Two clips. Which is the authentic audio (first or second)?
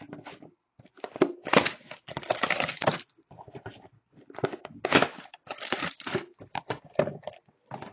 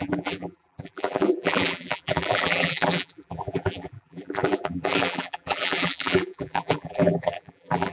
first